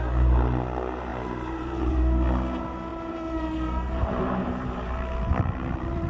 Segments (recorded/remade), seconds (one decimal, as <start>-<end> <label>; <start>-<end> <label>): 0.0-1.1 recorded; 1.1-2.0 remade; 2.0-2.9 recorded; 2.9-6.1 remade